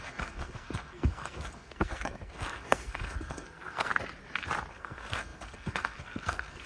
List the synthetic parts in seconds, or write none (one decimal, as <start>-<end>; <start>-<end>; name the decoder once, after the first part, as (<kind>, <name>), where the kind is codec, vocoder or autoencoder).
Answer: 0.0-3.9 (codec, SNAC); 4.7-6.7